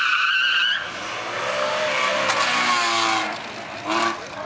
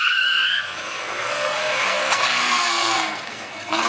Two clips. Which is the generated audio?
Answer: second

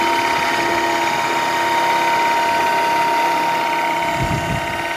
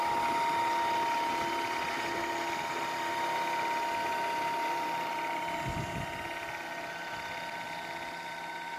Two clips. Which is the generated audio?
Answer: second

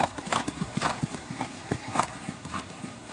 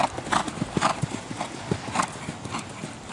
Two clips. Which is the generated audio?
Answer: first